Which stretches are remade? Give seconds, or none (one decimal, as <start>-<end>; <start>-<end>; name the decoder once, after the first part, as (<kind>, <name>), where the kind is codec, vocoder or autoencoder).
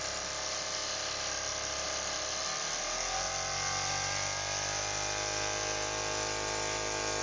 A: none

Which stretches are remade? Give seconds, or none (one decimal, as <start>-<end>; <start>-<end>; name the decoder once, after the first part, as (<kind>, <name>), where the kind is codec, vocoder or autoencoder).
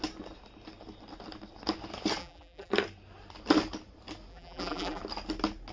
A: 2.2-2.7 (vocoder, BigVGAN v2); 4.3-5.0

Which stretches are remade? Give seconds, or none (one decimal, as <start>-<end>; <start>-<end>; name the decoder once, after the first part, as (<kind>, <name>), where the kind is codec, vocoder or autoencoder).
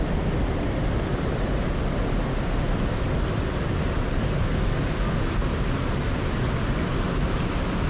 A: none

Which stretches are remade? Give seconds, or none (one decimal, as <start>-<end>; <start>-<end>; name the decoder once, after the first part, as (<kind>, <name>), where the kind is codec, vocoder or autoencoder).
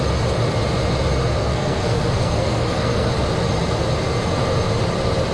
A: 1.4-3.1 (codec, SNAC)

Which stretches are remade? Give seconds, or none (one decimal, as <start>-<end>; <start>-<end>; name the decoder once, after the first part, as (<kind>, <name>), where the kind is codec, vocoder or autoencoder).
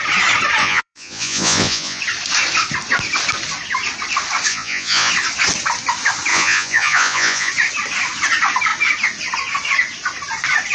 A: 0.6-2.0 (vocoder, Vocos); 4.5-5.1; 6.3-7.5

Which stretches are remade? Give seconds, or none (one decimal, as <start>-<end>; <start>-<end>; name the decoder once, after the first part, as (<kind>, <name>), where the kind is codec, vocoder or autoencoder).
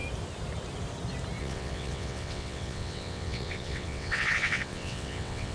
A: 1.4-5.5 (vocoder, WaveNeXt)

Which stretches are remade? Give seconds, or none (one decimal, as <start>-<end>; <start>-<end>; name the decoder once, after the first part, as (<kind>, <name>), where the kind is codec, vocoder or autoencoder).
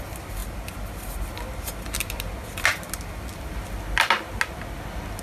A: none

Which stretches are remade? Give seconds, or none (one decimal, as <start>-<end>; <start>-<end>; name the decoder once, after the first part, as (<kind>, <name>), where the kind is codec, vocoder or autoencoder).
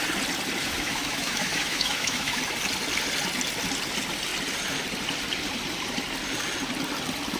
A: 0.6-2.4 (autoencoder, DAC-VAE)